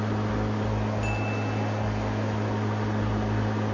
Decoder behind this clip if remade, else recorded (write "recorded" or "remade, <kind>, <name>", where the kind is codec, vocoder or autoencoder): recorded